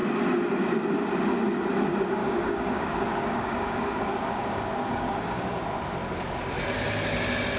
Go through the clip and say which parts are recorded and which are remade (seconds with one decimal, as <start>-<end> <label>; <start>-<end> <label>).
0.0-2.2 recorded; 2.2-5.6 remade; 5.6-7.6 recorded